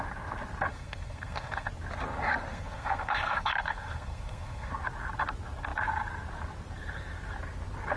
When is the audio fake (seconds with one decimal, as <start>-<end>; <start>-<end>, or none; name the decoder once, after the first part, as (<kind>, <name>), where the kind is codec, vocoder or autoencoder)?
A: 0.7-1.7 (codec, SNAC); 2.5-4.7